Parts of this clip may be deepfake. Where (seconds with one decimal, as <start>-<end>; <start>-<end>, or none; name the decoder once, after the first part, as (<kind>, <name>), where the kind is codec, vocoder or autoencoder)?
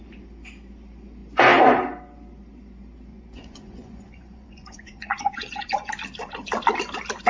3.1-5.9 (vocoder, Vocos)